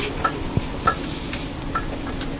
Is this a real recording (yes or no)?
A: yes